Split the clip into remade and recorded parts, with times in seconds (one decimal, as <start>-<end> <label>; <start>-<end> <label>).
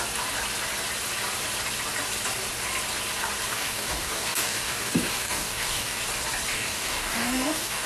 0.0-3.5 recorded; 3.5-6.0 remade; 6.0-6.5 recorded; 6.5-7.9 remade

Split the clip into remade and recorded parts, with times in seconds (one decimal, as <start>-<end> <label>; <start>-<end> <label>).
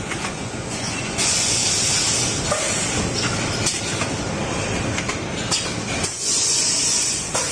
0.0-1.6 remade; 1.6-6.0 recorded; 6.0-7.5 remade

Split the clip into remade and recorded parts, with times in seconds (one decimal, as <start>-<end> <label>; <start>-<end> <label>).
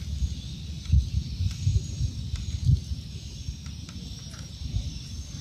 0.0-5.4 recorded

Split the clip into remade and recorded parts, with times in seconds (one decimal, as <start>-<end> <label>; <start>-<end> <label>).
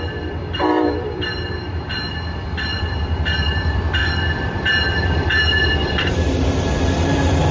0.0-4.0 remade; 4.0-4.8 recorded; 4.8-7.5 remade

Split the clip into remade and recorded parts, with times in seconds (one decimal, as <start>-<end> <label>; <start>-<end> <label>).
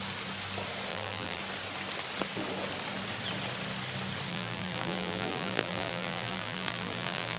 0.0-0.9 recorded; 0.9-1.4 remade; 1.4-4.3 recorded; 4.3-7.4 remade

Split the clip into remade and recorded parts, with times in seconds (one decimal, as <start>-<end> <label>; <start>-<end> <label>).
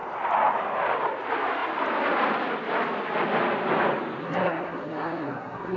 0.0-4.2 recorded; 4.2-5.8 remade